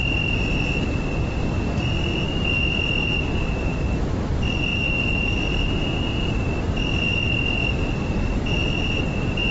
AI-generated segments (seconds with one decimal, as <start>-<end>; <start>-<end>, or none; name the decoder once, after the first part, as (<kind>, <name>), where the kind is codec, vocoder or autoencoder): 0.0-9.5 (vocoder, BigVGAN v2)